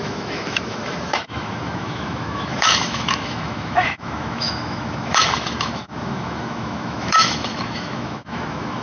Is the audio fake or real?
fake